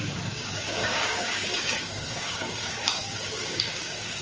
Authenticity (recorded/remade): remade